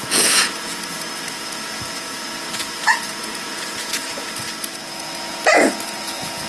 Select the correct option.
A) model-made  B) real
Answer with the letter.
A